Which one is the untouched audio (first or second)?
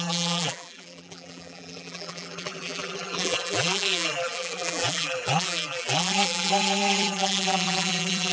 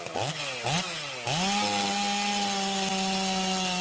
second